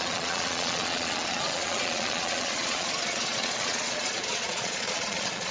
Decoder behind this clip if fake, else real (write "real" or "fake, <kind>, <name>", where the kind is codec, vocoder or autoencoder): fake, vocoder, Vocos